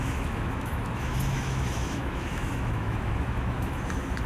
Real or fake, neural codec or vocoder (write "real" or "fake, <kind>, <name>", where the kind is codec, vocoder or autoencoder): fake, autoencoder, DAC-VAE